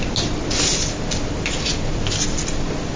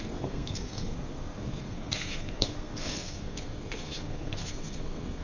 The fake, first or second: second